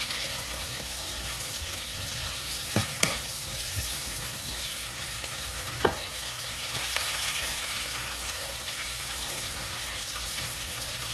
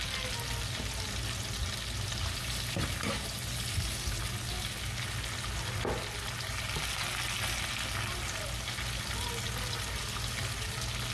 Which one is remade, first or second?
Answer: first